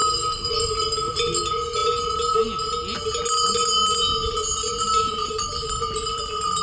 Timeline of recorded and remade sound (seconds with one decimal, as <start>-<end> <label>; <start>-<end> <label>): 0.0-1.4 remade; 1.4-5.2 recorded; 5.2-6.6 remade